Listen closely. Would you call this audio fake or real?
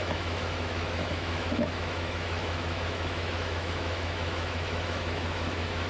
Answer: fake